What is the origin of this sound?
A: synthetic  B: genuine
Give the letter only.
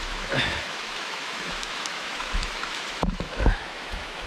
A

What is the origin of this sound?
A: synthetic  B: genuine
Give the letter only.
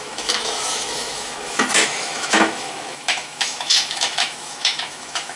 A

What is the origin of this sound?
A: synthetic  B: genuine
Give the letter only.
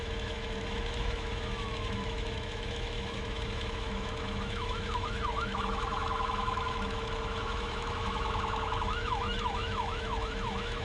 A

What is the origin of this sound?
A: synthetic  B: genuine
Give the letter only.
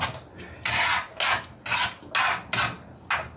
B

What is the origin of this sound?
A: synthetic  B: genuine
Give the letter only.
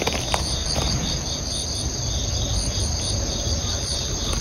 B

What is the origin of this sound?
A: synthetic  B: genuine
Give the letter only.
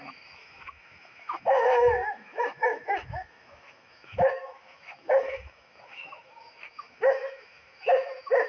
A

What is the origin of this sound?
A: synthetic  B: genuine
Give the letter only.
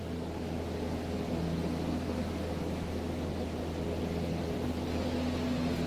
B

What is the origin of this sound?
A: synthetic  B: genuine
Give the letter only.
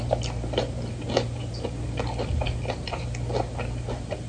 B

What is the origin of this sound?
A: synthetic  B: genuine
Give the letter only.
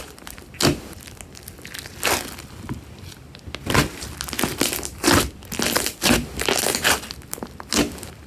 B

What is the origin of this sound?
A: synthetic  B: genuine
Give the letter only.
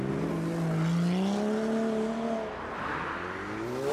B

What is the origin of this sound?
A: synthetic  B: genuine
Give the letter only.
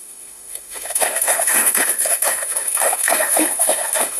A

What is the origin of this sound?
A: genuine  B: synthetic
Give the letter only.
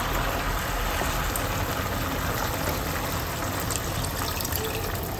A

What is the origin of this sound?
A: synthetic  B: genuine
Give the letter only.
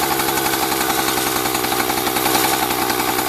B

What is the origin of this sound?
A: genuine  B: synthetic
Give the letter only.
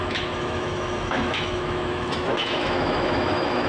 B